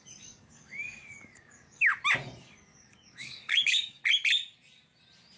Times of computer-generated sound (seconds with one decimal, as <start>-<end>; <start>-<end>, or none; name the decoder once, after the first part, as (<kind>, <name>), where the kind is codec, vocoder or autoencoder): 0.0-1.9 (codec, DAC); 2.4-4.0